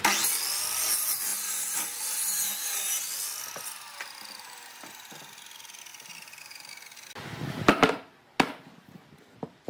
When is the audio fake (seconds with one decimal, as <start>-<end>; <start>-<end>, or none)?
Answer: 5.9-6.7